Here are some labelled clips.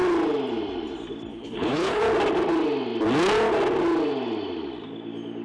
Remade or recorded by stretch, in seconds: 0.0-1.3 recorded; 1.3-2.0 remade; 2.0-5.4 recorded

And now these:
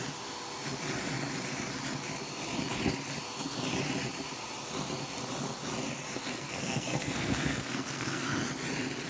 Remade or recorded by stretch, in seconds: 0.0-6.3 recorded; 6.3-8.4 remade; 8.4-9.1 recorded

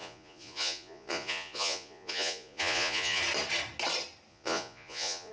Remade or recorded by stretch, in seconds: 0.0-3.2 remade; 3.2-4.3 recorded; 4.3-5.3 remade

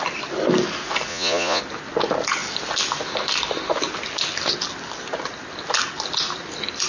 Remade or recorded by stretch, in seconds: 0.0-1.1 recorded; 1.1-1.6 remade; 1.6-6.9 recorded

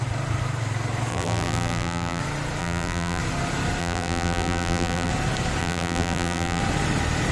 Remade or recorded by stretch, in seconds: 0.0-1.1 recorded; 1.1-2.2 remade; 2.2-2.6 recorded; 2.6-3.2 remade; 3.2-3.8 recorded; 3.8-5.1 remade; 5.1-5.6 recorded; 5.6-6.6 remade; 6.6-7.3 recorded

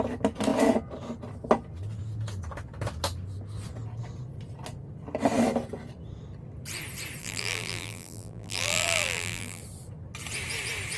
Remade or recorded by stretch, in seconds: 0.0-7.2 recorded; 7.2-9.6 remade; 9.6-11.0 recorded

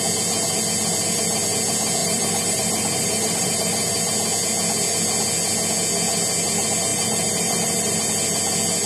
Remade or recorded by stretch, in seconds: 0.0-2.0 recorded; 2.0-4.0 remade; 4.0-6.9 recorded; 6.9-8.0 remade; 8.0-8.9 recorded